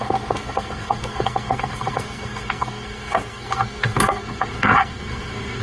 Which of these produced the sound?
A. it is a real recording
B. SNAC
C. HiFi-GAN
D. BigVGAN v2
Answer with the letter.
B